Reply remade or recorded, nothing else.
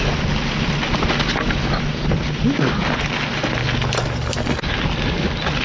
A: recorded